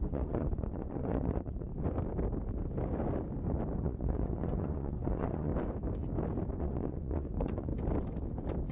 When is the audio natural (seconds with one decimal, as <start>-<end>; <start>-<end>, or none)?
1.7-3.8; 5.5-6.6; 7.7-8.7